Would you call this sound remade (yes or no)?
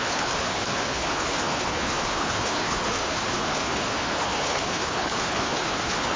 yes